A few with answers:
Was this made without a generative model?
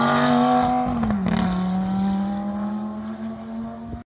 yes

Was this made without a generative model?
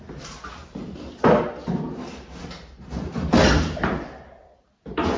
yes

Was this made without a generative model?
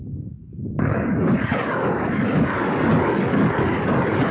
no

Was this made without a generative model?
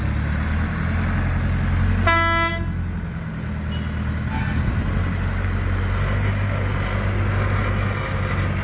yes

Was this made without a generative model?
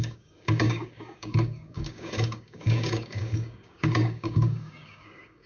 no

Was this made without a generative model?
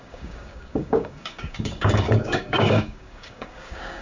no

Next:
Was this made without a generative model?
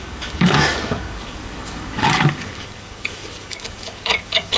no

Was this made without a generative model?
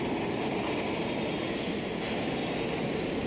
yes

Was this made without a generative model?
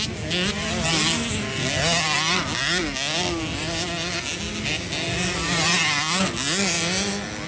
yes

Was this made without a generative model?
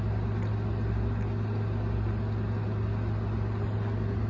yes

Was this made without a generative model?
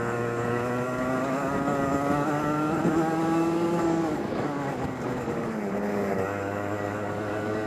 no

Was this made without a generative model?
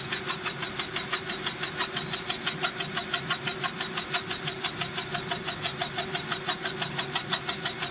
yes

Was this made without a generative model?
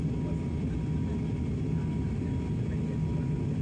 yes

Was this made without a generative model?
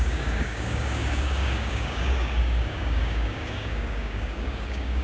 no